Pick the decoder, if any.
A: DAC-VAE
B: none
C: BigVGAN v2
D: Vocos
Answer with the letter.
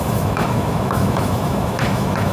A